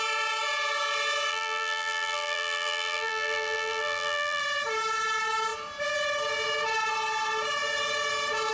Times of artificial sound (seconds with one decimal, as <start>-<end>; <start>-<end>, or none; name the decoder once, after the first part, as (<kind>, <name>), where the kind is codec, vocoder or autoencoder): 1.3-4.4 (vocoder, BigVGAN v2)